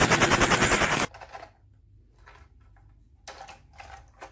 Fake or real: real